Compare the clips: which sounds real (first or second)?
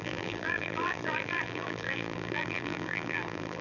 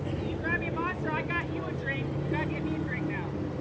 second